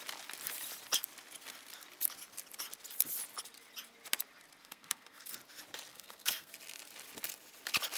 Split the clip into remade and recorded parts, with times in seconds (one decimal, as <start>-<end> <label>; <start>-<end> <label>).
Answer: 0.0-4.6 recorded; 4.6-5.3 remade; 5.3-5.9 recorded; 5.9-6.5 remade; 6.5-8.0 recorded